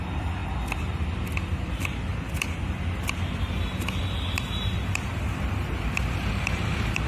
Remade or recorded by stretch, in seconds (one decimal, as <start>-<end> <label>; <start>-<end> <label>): 0.0-7.1 recorded